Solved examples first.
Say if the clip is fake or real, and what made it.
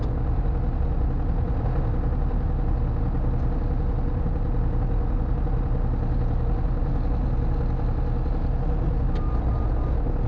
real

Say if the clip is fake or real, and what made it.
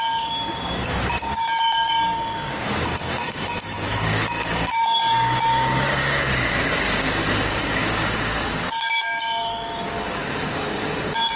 fake, codec, DAC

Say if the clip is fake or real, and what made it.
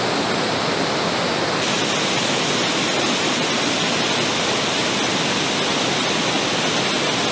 real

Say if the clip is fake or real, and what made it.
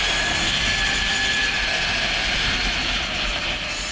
real